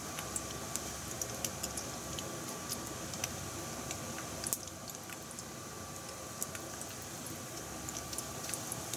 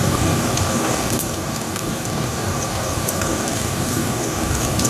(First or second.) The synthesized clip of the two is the second